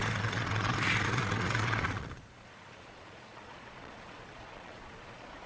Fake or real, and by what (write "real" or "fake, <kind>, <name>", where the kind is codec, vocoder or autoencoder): fake, vocoder, Vocos